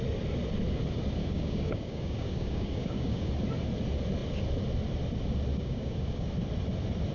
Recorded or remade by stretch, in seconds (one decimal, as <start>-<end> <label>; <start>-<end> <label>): 0.0-1.2 recorded; 1.2-3.3 remade; 3.3-5.5 recorded; 5.5-6.3 remade; 6.3-7.1 recorded